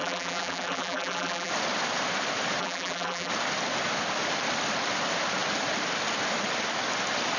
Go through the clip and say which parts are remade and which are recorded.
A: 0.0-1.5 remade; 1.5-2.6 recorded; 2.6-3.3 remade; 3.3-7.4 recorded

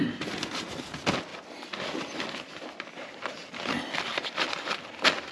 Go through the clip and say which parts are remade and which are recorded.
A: 0.0-1.3 recorded; 1.3-2.8 remade; 2.8-3.4 recorded; 3.4-4.8 remade; 4.8-5.3 recorded

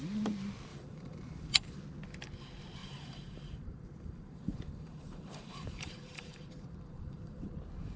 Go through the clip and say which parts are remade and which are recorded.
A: 0.0-0.7 recorded; 0.7-1.8 remade; 1.8-2.8 recorded; 2.8-7.6 remade; 7.6-8.0 recorded

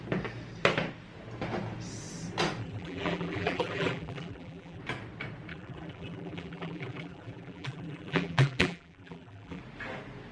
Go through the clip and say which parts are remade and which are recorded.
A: 0.0-2.6 recorded; 2.6-4.8 remade; 4.8-5.5 recorded; 5.5-9.6 remade; 9.6-10.3 recorded